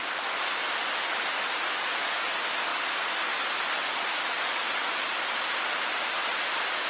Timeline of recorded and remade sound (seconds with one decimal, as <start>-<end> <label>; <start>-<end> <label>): 0.0-6.9 recorded